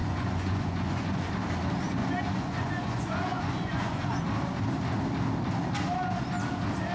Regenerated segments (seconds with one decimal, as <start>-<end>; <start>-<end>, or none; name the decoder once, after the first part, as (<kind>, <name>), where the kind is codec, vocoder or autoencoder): 0.0-1.3 (vocoder, Vocos); 2.0-4.2